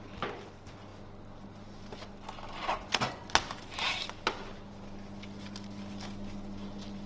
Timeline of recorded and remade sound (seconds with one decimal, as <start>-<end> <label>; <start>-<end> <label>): 0.0-2.6 recorded; 2.6-3.2 remade; 3.2-7.1 recorded